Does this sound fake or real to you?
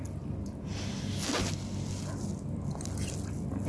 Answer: real